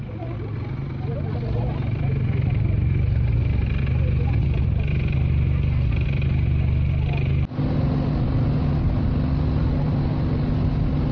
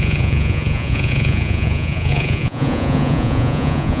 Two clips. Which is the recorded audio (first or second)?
first